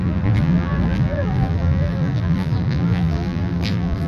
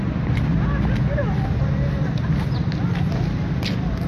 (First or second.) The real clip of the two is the second